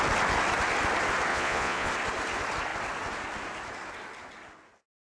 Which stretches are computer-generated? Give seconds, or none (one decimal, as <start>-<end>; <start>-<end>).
1.3-1.9